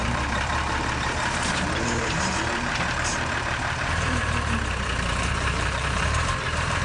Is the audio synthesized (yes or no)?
yes